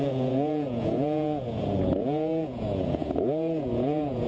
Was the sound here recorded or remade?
remade